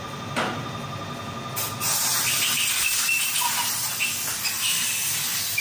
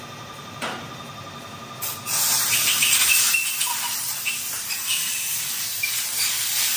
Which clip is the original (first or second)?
first